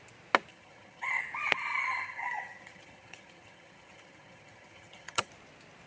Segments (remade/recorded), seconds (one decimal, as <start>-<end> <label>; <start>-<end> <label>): 0.0-0.5 recorded; 0.5-1.2 remade; 1.2-1.8 recorded; 1.8-5.3 remade; 5.3-5.9 recorded